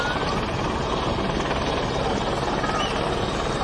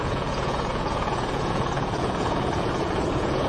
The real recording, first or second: first